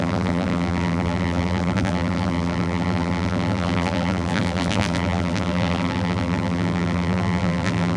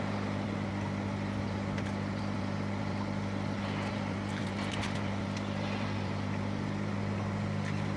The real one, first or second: second